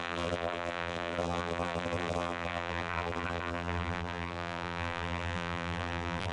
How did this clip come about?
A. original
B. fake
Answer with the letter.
B